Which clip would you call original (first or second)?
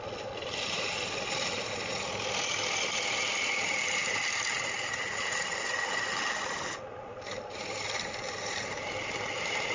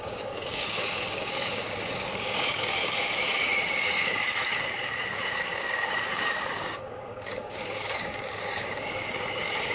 first